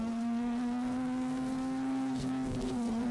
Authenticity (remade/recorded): remade